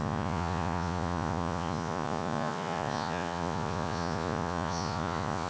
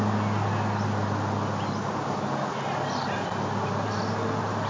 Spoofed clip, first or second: first